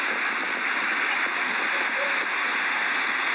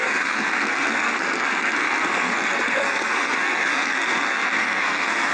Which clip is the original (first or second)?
first